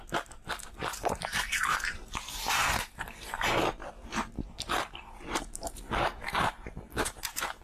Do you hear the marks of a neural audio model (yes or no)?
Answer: yes